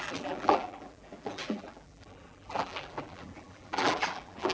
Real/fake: fake